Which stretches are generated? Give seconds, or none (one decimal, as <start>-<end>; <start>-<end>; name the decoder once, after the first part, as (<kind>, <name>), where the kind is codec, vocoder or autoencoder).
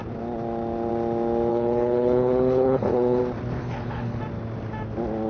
1.5-3.2 (codec, HILCodec); 3.6-4.2